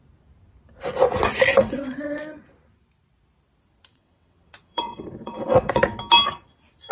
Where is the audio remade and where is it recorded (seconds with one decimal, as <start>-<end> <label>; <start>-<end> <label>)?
0.0-1.5 recorded; 1.5-2.2 remade; 2.2-3.9 recorded; 3.9-5.8 remade; 5.8-6.9 recorded